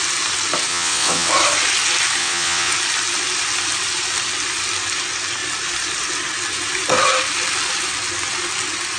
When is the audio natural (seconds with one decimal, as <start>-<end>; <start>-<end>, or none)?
0.0-0.7; 1.3-2.2; 2.7-9.0